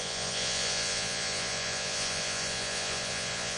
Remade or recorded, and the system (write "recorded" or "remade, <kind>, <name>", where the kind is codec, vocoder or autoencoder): remade, vocoder, Vocos